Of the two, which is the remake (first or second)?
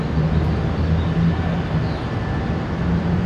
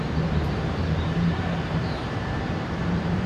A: second